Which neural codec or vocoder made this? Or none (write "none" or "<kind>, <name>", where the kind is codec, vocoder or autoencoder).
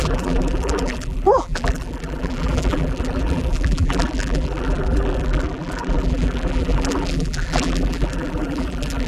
vocoder, BigVGAN v2